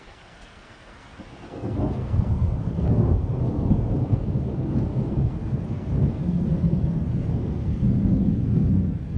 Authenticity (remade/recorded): remade